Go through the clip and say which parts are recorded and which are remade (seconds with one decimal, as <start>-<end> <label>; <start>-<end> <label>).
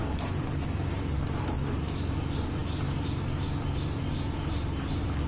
0.0-5.3 remade